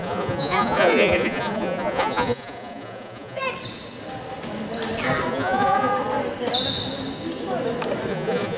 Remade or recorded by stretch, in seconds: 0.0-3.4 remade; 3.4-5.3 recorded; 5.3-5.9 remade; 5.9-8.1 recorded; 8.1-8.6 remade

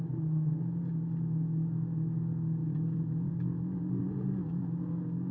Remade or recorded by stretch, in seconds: 0.0-2.6 recorded; 2.6-3.3 remade; 3.3-4.0 recorded; 4.0-4.6 remade; 4.6-5.3 recorded

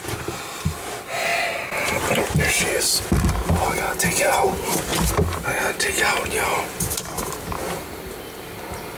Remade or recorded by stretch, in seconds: 0.0-9.0 recorded

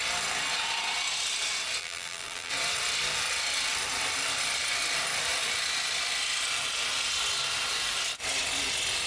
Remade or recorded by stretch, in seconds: 0.0-1.8 recorded; 1.8-2.5 remade; 2.5-9.1 recorded

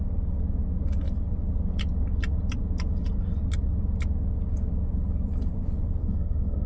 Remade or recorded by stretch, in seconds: 0.0-6.0 recorded; 6.0-6.7 remade

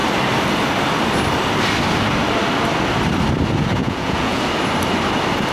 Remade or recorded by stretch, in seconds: 0.0-3.8 recorded; 3.8-4.4 remade; 4.4-5.5 recorded

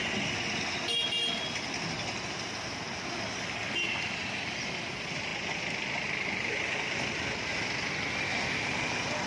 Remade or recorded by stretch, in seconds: 0.0-9.3 recorded

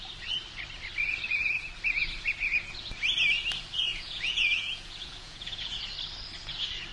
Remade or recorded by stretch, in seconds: 0.0-3.9 recorded; 3.9-5.8 remade; 5.8-6.9 recorded